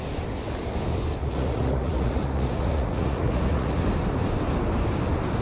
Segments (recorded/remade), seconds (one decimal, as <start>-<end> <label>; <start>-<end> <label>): 0.0-1.2 recorded; 1.2-3.8 remade; 3.8-5.4 recorded